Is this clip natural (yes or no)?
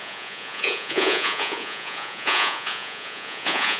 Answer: no